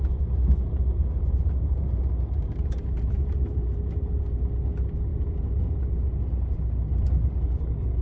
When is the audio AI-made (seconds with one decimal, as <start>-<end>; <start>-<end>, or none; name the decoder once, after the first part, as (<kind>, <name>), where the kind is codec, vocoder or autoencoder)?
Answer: 0.9-4.2 (vocoder, BigVGAN v2); 5.1-5.8